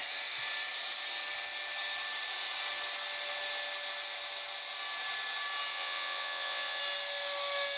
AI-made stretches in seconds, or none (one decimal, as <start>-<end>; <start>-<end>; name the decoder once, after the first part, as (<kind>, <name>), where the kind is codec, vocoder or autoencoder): 5.7-6.8 (vocoder, WaveNeXt)